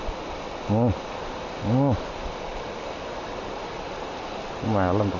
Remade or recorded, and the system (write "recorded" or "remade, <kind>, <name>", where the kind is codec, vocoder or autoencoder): recorded